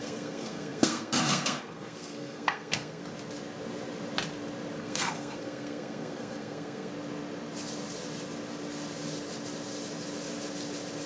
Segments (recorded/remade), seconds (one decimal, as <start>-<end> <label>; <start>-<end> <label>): 0.0-3.0 remade; 3.0-4.8 recorded; 4.8-6.9 remade; 6.9-11.1 recorded